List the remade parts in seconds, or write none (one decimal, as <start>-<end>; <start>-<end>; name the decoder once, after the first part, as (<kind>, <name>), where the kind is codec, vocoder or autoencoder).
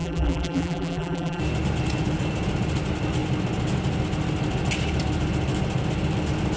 0.0-1.4 (vocoder, BigVGAN v2)